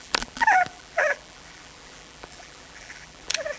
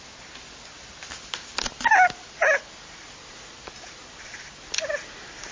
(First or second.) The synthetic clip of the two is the first